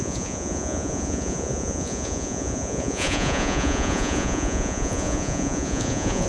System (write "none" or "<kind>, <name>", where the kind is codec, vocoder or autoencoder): vocoder, Vocos